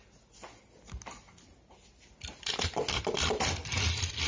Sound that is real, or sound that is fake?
real